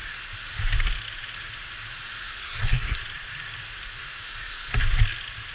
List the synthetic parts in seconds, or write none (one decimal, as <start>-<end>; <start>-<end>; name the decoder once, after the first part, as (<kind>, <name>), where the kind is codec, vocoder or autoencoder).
2.4-3.0 (codec, SNAC)